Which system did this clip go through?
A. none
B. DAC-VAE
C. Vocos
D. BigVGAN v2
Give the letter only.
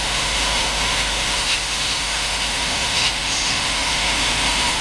B